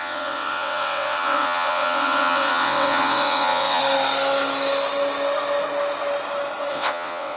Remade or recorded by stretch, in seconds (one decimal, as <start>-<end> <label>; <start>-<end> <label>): 0.0-3.8 remade; 3.8-6.7 recorded; 6.7-7.4 remade